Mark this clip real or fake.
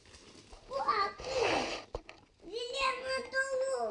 real